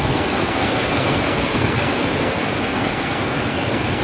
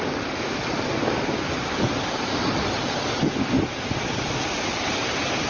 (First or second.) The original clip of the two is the second